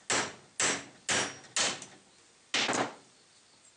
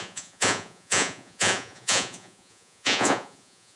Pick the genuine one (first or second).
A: first